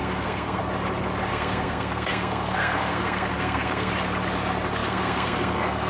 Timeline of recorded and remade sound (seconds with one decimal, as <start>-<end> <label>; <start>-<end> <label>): 0.0-0.6 remade; 0.6-1.3 recorded; 1.3-3.9 remade; 3.9-4.8 recorded; 4.8-5.9 remade